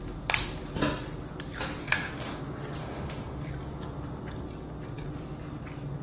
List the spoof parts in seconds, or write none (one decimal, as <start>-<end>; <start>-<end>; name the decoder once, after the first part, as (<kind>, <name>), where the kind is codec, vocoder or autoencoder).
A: 1.8-2.4 (autoencoder, DAC-VAE); 2.8-3.5